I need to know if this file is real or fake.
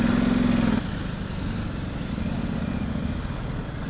real